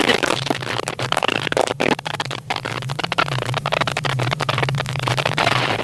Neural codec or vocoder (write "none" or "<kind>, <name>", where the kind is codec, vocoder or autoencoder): vocoder, BigVGAN v2